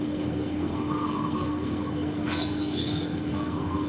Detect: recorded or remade remade